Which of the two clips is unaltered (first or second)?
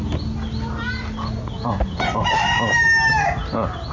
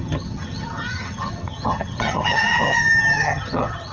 first